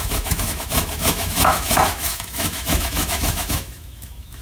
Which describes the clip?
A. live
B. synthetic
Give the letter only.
B